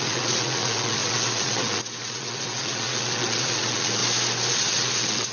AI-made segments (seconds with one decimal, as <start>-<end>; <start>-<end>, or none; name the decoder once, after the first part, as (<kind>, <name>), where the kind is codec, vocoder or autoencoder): 0.0-4.0 (vocoder, WaveNeXt); 4.5-5.3